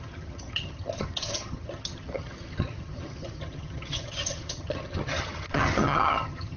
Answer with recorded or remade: remade